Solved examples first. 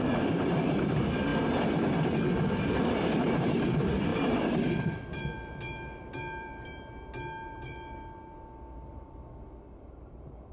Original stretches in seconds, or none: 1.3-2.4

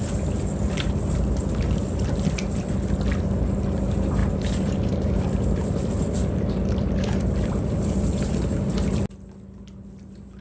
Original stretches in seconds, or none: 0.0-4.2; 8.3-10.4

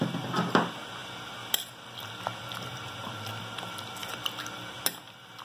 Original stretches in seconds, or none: 0.0-5.4